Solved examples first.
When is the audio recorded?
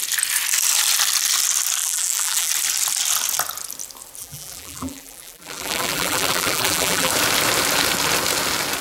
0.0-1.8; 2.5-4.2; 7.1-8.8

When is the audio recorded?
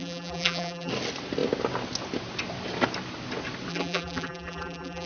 0.9-3.7